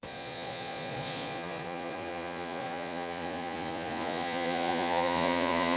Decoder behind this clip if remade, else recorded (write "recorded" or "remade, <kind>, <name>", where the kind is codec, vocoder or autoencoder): remade, vocoder, Vocos